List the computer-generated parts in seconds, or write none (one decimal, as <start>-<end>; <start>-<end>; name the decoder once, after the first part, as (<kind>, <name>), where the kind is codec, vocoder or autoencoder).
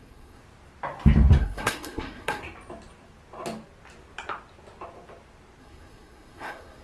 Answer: 0.0-0.4 (codec, SNAC); 1.4-2.4; 5.6-6.8